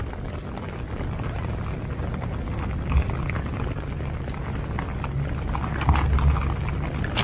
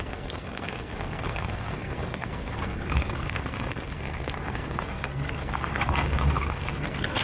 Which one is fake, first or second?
second